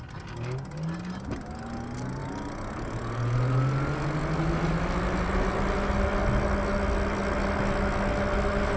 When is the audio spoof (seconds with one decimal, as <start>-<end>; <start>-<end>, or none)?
none